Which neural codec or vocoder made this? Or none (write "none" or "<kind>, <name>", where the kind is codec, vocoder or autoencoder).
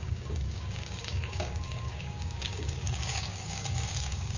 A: codec, DAC